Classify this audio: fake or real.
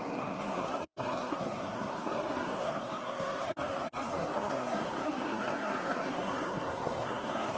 fake